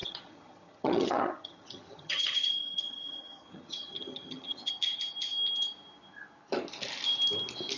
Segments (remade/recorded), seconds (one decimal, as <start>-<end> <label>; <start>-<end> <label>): 0.0-4.7 remade; 4.7-7.8 recorded